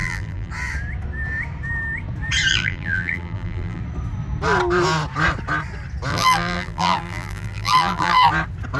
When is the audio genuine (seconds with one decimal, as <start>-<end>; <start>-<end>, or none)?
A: 0.5-2.5; 3.8-6.1; 8.3-8.8